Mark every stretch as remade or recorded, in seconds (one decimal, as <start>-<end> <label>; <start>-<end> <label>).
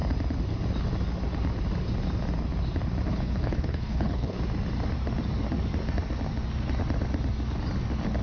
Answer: 0.0-3.1 recorded; 3.1-4.4 remade; 4.4-8.2 recorded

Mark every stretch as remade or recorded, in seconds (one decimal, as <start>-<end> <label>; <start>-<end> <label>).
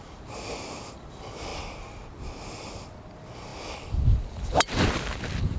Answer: 0.0-1.5 remade; 1.5-2.7 recorded; 2.7-5.6 remade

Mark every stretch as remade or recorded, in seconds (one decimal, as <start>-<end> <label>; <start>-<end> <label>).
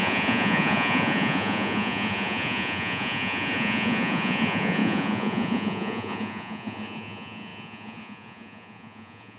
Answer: 0.0-9.4 remade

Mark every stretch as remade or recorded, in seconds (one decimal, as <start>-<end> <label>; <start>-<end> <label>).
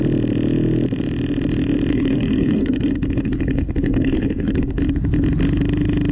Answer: 0.0-1.9 recorded; 1.9-4.8 remade; 4.8-6.1 recorded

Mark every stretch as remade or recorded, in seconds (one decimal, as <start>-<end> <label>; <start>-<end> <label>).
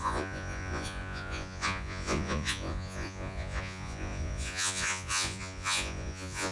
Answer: 0.0-6.5 remade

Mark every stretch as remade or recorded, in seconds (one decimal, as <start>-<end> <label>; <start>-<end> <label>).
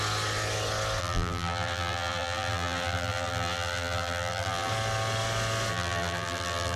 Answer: 0.0-1.0 recorded; 1.0-4.7 remade; 4.7-5.7 recorded; 5.7-6.8 remade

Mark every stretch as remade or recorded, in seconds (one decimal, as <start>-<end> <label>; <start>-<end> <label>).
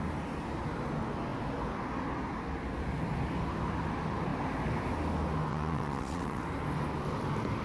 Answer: 0.0-5.5 recorded; 5.5-6.4 remade; 6.4-7.6 recorded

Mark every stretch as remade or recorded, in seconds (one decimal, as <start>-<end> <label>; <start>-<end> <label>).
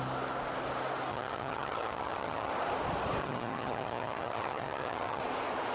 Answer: 0.0-1.1 recorded; 1.1-2.5 remade; 2.5-3.2 recorded; 3.2-5.2 remade; 5.2-5.7 recorded